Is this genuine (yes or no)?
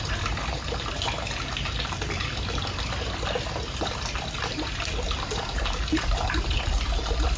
yes